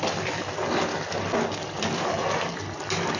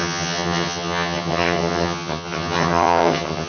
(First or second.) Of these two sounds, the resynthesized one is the second